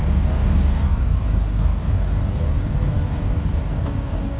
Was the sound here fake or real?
fake